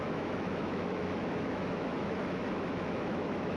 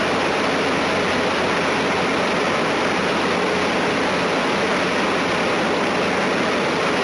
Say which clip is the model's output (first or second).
first